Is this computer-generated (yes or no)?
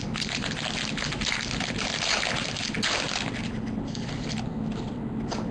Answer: no